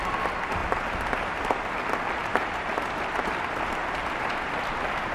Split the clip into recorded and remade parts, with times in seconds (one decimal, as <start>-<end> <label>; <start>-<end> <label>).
0.0-0.6 recorded; 0.6-1.4 remade; 1.4-2.2 recorded; 2.2-3.3 remade; 3.3-3.8 recorded; 3.8-4.5 remade; 4.5-5.1 recorded